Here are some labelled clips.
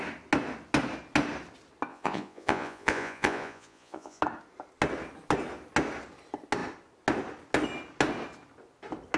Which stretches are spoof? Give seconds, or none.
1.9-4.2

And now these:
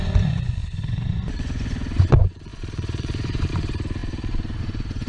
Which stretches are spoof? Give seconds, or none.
0.0-5.1

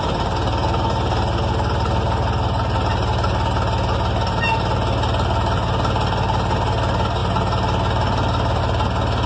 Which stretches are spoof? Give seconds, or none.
none

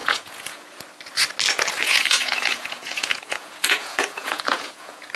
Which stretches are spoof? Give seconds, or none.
0.0-0.8; 1.8-5.1

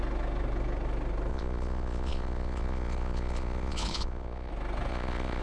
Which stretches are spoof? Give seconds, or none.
1.3-4.5; 4.9-5.4

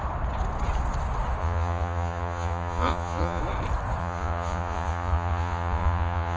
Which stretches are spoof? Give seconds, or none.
1.4-3.4; 4.0-6.4

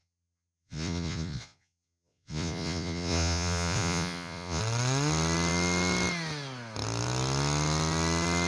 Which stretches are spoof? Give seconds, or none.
0.0-4.6